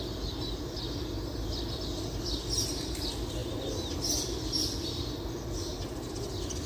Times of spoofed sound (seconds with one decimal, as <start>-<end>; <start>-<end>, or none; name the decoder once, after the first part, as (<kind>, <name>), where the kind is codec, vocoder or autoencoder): none